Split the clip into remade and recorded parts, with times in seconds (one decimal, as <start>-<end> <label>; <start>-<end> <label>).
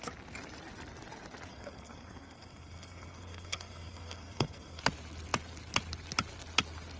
0.0-1.5 recorded; 1.5-4.8 remade; 4.8-7.0 recorded